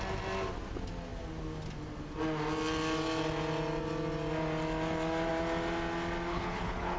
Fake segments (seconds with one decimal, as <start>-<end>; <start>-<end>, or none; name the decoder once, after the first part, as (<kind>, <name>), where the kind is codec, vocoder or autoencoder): 6.3-7.0 (codec, HILCodec)